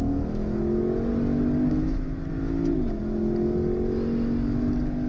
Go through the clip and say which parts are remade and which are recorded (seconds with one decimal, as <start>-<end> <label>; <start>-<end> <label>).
0.0-1.1 remade; 1.1-1.7 recorded; 1.7-2.3 remade; 2.3-5.1 recorded